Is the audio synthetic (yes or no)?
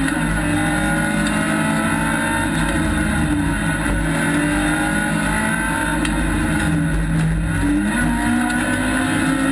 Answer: no